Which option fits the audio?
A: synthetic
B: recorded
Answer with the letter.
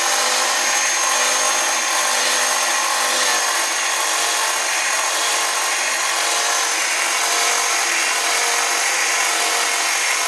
B